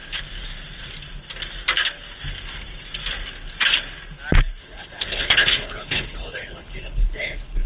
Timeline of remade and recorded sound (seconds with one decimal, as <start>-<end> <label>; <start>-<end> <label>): 0.0-4.6 recorded; 4.6-7.7 remade